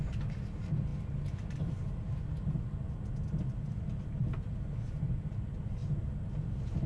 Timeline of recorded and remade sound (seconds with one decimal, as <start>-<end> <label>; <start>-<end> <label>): 0.0-6.9 recorded